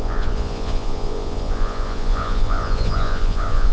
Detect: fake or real fake